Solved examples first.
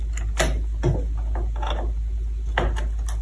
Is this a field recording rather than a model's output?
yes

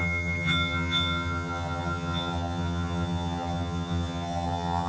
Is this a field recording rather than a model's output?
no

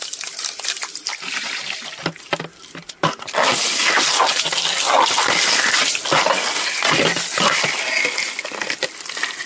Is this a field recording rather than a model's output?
yes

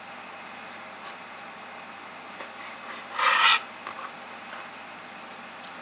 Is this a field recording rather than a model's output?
yes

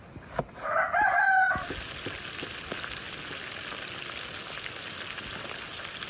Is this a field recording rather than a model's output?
yes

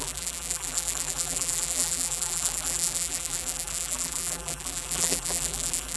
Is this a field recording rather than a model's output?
no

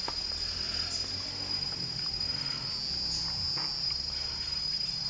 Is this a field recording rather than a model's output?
yes